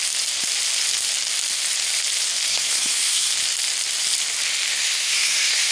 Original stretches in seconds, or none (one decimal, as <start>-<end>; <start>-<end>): 0.0-2.5; 3.3-4.7